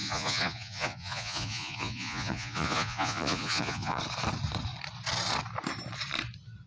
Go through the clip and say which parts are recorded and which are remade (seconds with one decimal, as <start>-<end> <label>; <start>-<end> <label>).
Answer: 0.0-4.0 remade; 4.0-6.7 recorded